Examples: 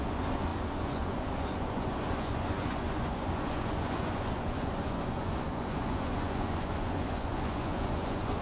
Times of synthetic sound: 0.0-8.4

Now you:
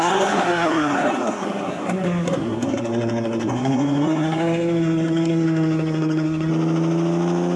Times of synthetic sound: 0.0-6.5

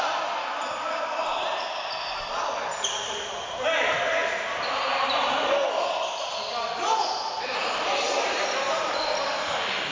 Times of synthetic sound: none